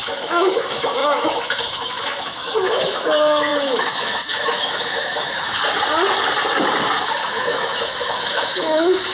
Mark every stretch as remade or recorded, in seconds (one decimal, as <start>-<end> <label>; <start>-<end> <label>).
0.0-5.6 remade; 5.6-7.0 recorded; 7.0-9.1 remade